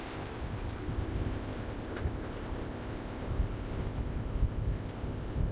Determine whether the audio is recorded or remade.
remade